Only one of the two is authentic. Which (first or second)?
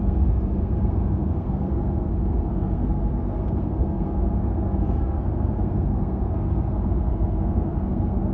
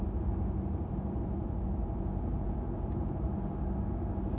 second